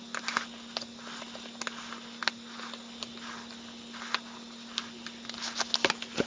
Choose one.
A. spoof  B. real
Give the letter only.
B